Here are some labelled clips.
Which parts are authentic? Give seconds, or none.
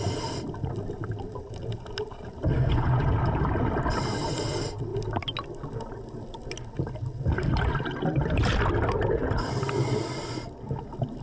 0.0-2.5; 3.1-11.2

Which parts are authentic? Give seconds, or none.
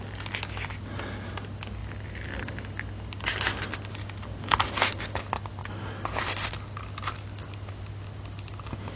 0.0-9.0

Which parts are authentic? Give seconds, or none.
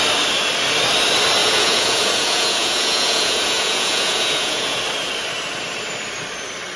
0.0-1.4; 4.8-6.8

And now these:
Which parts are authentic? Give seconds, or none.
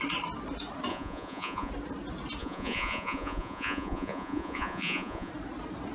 0.0-0.9; 1.7-2.4; 5.3-5.9